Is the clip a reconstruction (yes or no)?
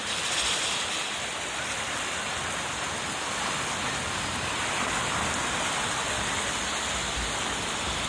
no